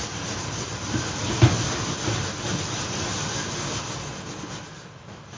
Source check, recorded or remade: recorded